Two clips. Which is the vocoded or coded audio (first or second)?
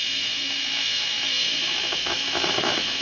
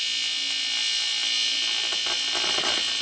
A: first